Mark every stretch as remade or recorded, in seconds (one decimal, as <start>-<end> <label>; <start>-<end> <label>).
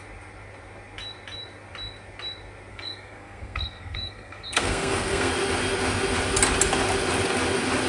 0.0-2.7 recorded; 2.7-5.3 remade; 5.3-7.9 recorded